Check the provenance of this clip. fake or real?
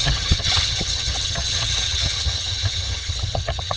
fake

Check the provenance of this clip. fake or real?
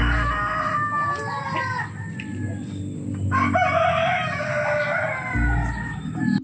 real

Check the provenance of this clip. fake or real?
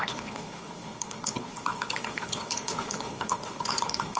fake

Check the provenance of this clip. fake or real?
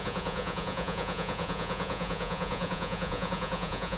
fake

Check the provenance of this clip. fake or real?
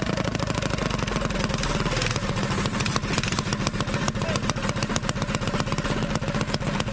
real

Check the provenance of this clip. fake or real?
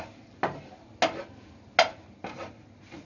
real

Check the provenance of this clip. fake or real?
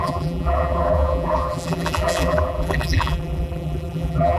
fake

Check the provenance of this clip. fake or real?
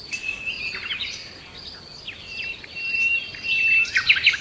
fake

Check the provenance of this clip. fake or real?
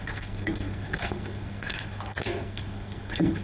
fake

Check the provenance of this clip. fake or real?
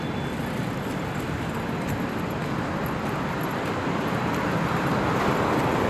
real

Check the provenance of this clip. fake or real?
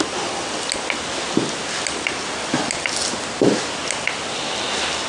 real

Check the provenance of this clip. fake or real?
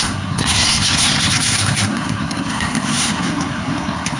fake